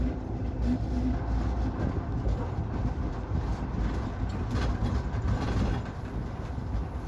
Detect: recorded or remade recorded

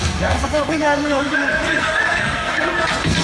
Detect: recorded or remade remade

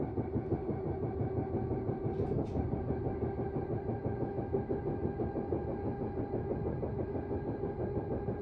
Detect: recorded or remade recorded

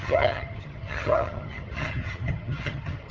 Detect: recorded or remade remade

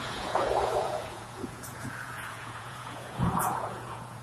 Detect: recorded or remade remade